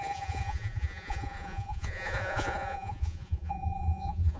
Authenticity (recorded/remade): remade